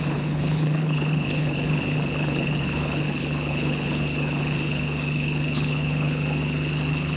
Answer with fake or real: fake